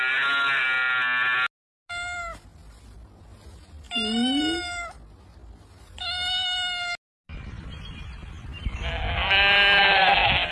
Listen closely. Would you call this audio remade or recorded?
recorded